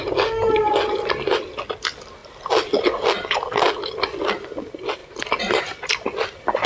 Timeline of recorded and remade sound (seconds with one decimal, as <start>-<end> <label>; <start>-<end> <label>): 0.0-6.7 recorded